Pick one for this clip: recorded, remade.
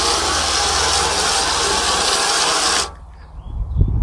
recorded